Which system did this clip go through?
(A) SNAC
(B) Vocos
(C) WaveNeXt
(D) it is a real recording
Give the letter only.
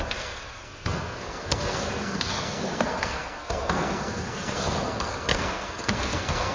A